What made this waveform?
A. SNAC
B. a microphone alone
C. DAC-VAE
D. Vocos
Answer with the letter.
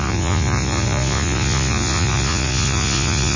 D